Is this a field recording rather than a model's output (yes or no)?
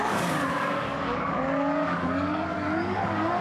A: no